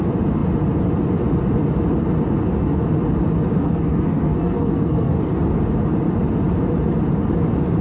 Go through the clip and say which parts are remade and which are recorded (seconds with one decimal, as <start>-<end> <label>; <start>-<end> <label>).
0.0-3.6 recorded; 3.6-5.3 remade; 5.3-7.8 recorded